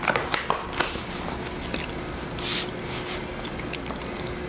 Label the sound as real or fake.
real